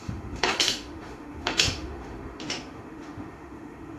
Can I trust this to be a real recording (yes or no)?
no